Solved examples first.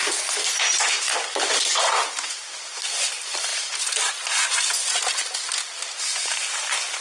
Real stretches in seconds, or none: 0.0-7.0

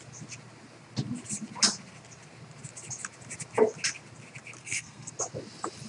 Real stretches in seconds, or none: 0.0-4.6; 5.1-5.9